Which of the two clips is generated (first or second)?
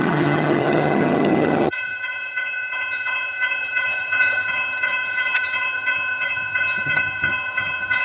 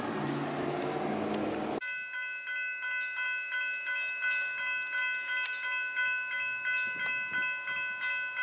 first